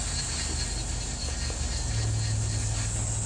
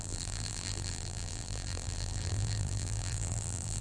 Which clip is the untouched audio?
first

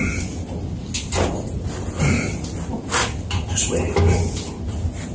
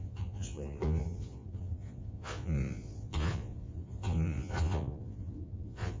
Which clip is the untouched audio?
first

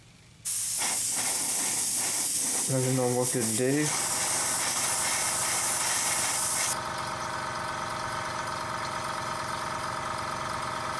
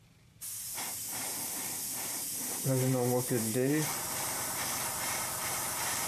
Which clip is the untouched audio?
first